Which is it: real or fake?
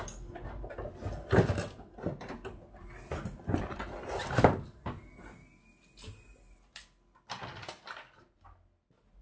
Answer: real